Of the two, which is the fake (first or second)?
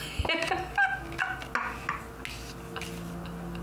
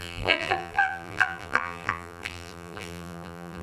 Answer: second